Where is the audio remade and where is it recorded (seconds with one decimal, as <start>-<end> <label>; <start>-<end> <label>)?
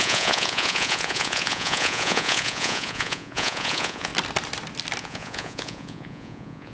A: 0.0-4.1 remade; 4.1-5.0 recorded; 5.0-6.7 remade